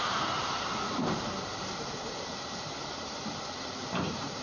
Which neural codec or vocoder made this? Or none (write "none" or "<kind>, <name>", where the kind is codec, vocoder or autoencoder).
vocoder, BigVGAN v2